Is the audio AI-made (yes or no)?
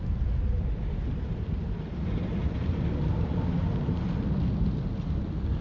no